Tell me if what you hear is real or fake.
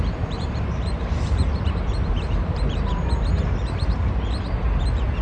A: fake